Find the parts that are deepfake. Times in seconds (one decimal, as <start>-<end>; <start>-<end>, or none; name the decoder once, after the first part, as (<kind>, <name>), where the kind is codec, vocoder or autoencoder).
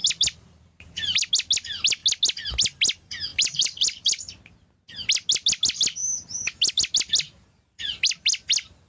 0.0-1.3 (vocoder, BigVGAN v2); 3.3-4.3